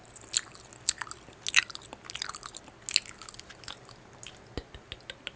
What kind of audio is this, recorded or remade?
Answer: recorded